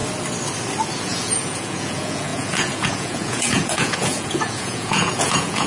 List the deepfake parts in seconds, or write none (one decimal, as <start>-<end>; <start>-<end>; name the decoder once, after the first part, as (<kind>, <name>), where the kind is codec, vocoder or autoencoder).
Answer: 1.0-5.7 (vocoder, Vocos)